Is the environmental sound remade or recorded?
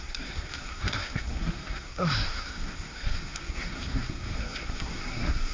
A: remade